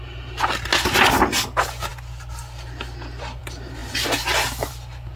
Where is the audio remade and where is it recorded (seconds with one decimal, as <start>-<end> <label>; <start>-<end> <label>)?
0.0-1.9 recorded; 1.9-3.4 remade; 3.4-5.2 recorded